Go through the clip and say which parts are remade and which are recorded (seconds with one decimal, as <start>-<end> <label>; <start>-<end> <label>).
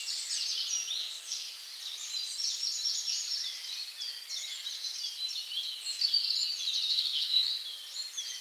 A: 0.0-1.0 recorded; 1.0-1.5 remade; 1.5-6.9 recorded; 6.9-7.5 remade; 7.5-8.4 recorded